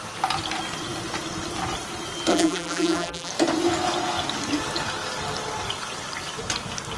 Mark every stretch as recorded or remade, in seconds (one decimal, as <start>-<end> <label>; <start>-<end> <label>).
0.0-2.3 recorded; 2.3-3.3 remade; 3.3-7.0 recorded